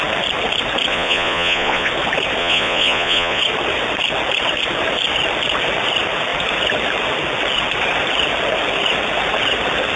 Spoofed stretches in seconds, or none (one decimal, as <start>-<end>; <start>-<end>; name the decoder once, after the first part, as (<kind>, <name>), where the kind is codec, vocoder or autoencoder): 0.9-1.9 (vocoder, Vocos); 2.4-3.4